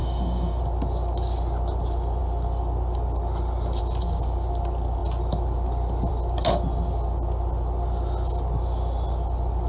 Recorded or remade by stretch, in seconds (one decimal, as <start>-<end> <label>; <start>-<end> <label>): 0.0-0.6 remade; 0.6-9.7 recorded